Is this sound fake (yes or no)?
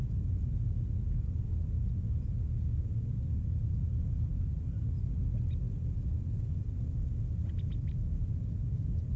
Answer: no